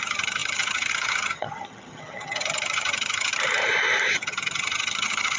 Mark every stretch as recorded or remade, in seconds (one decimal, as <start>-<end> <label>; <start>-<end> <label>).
0.0-3.3 remade; 3.3-4.1 recorded; 4.1-5.4 remade